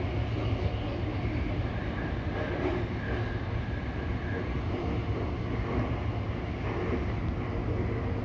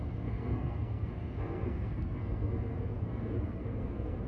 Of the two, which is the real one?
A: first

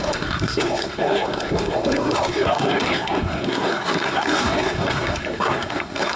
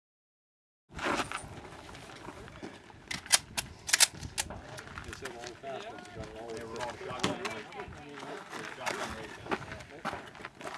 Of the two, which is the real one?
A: second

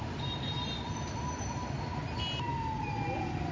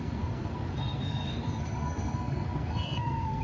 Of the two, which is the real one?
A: first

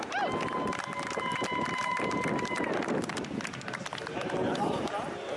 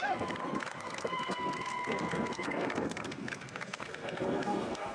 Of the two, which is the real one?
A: first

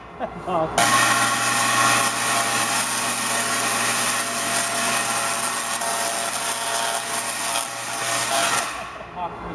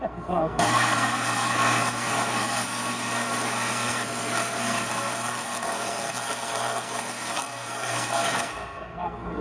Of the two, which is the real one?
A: first